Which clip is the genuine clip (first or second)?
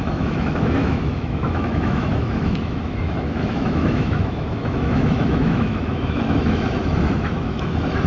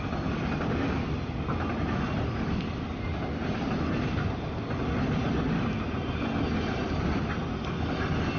second